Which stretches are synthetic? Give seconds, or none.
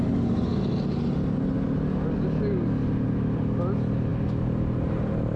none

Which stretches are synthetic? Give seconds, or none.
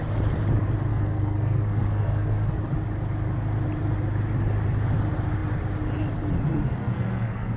0.9-2.6; 6.8-7.6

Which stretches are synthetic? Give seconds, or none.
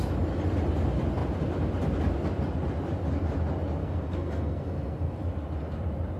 3.8-5.2